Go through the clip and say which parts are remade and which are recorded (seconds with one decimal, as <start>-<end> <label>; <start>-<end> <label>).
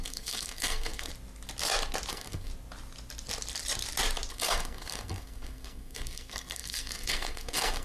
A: 0.0-1.1 remade; 1.1-2.1 recorded; 2.1-2.5 remade; 2.5-4.3 recorded; 4.3-7.8 remade